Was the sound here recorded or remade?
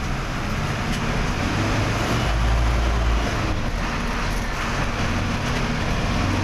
recorded